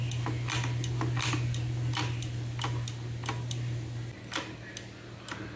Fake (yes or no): no